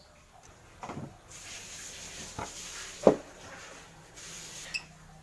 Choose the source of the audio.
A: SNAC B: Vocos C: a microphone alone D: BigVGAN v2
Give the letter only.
C